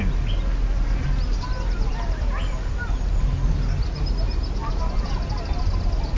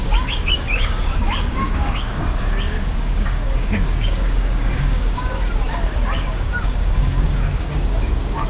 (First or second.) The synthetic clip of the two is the second